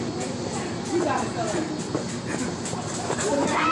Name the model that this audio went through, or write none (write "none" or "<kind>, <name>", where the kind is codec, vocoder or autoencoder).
none